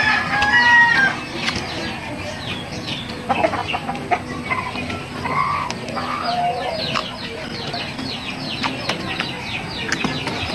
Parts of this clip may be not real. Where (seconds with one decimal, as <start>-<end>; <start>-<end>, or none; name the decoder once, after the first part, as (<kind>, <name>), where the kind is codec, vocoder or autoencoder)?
none